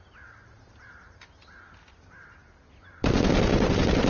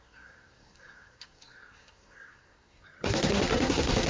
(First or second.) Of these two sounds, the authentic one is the first